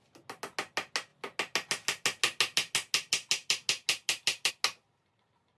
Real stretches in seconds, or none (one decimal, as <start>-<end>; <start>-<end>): 0.0-5.6